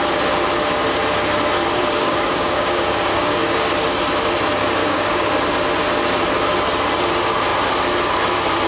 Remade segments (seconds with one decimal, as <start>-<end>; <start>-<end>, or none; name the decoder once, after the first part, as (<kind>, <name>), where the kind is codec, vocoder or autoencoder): 1.8-3.7 (codec, DAC); 4.8-5.3

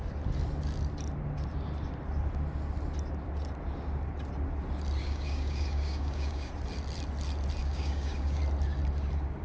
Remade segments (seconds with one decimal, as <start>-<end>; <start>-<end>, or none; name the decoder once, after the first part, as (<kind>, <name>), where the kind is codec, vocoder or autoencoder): 5.0-6.5 (codec, DAC); 7.6-8.4

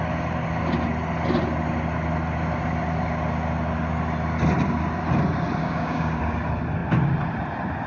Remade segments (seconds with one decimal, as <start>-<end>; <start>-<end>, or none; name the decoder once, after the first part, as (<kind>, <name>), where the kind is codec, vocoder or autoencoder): 5.6-6.2 (codec, DAC)

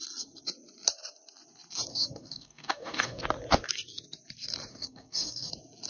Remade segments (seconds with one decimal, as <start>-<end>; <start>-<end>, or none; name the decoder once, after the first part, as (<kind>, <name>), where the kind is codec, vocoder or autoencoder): 1.9-3.2 (codec, DAC); 4.7-5.5